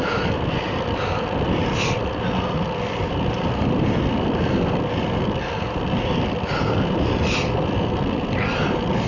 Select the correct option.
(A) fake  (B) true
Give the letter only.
B